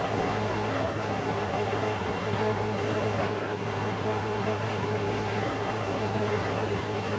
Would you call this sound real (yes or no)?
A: no